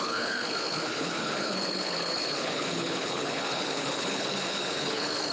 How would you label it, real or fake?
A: fake